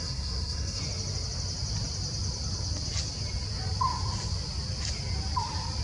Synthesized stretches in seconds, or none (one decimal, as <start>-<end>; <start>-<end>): 0.0-0.8